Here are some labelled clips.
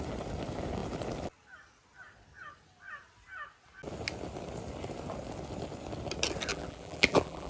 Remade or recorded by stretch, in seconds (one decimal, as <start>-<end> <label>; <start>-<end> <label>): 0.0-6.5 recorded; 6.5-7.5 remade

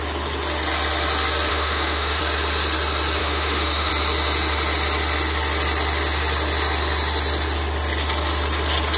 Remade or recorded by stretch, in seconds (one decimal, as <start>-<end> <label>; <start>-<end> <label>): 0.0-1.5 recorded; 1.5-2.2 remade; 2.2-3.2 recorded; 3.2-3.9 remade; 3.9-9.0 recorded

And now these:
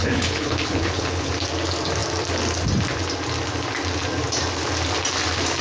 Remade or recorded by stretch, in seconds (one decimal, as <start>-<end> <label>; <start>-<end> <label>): 0.0-1.3 remade; 1.3-5.6 recorded

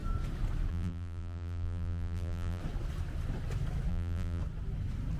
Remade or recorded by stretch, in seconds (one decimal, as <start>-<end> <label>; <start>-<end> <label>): 0.0-0.7 recorded; 0.7-2.6 remade; 2.6-3.9 recorded; 3.9-4.4 remade; 4.4-5.2 recorded

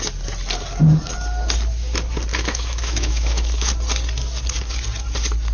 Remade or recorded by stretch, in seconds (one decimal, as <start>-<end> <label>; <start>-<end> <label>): 0.0-2.3 recorded; 2.3-3.7 remade; 3.7-5.5 recorded

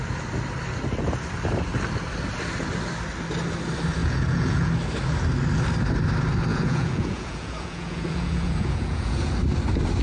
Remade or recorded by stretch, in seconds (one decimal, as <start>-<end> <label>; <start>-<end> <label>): 0.0-4.0 recorded; 4.0-4.7 remade; 4.7-6.5 recorded; 6.5-9.3 remade; 9.3-10.0 recorded